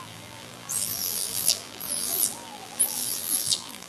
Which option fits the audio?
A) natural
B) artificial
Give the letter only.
B